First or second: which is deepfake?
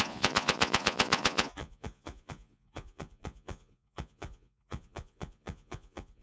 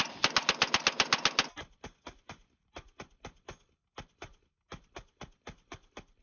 first